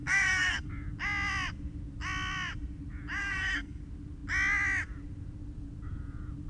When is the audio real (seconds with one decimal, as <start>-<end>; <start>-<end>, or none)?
0.7-3.2; 3.8-6.5